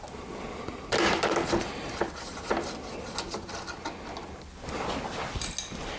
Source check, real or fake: real